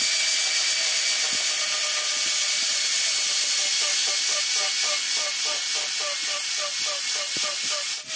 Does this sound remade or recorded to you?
recorded